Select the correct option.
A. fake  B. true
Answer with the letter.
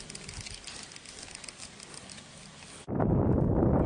B